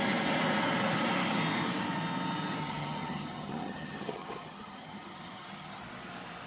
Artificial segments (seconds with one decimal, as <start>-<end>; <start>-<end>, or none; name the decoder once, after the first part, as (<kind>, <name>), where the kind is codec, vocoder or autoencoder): 2.6-5.8 (vocoder, HiFi-GAN)